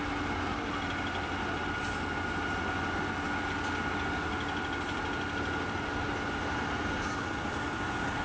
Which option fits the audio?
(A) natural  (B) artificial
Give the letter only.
A